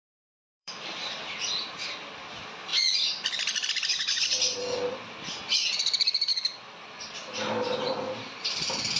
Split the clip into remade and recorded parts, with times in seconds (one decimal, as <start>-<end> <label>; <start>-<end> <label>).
0.0-1.3 remade; 1.3-2.7 recorded; 2.7-4.9 remade; 4.9-9.0 recorded